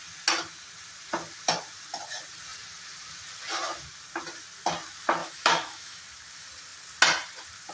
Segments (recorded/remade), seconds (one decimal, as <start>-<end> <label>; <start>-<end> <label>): 0.0-5.2 recorded; 5.2-6.0 remade; 6.0-7.7 recorded